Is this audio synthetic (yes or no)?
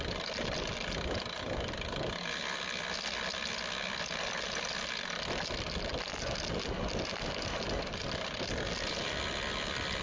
no